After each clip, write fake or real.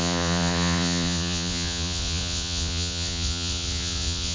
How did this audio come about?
fake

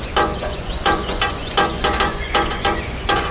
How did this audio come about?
fake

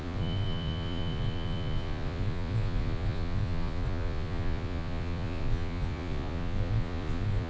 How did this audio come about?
fake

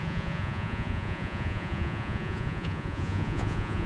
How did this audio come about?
fake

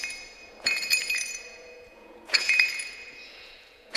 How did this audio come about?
fake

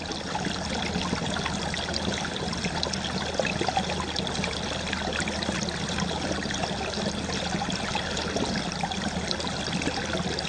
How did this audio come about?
real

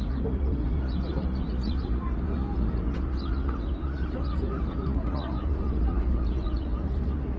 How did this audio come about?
fake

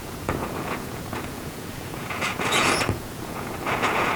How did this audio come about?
fake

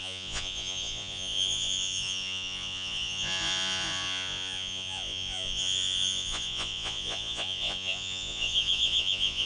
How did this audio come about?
fake